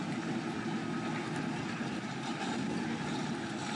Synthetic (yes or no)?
no